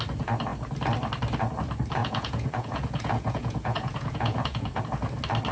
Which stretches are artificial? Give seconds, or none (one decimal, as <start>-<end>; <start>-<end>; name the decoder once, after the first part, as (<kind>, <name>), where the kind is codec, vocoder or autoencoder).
2.0-4.8 (vocoder, Vocos)